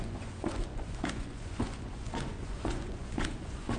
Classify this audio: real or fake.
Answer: fake